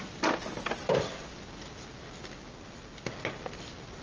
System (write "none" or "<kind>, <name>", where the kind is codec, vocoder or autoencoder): none